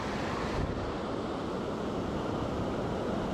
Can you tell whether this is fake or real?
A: real